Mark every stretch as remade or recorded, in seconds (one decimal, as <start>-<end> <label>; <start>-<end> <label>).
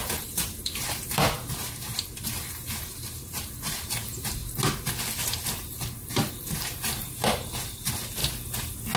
0.0-4.4 remade; 4.4-6.1 recorded; 6.1-8.2 remade; 8.2-9.0 recorded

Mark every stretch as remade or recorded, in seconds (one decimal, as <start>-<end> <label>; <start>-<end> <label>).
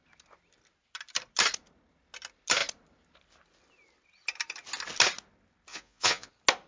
0.0-5.7 recorded; 5.7-6.3 remade; 6.3-6.7 recorded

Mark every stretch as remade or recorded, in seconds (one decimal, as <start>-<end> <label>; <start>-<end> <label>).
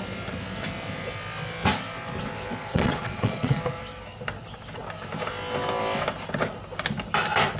0.0-2.6 recorded; 2.6-3.6 remade; 3.6-7.6 recorded